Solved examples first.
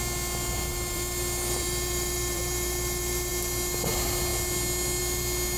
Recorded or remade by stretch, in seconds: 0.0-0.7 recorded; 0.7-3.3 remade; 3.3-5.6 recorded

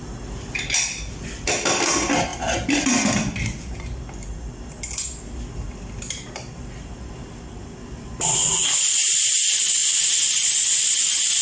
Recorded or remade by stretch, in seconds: 0.0-9.8 recorded; 9.8-10.3 remade; 10.3-11.4 recorded

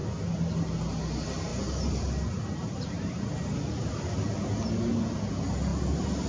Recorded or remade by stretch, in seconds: 0.0-1.5 recorded; 1.5-5.3 remade; 5.3-6.3 recorded